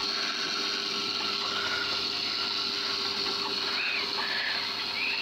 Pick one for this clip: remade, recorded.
recorded